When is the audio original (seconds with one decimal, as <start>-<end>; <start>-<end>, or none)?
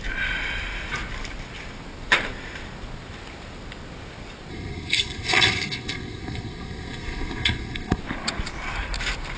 0.0-4.5; 8.0-9.4